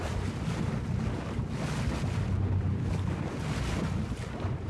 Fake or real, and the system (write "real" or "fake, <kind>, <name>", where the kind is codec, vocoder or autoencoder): real